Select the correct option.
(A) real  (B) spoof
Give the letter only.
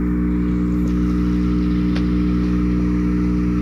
A